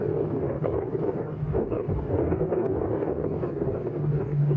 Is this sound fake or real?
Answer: fake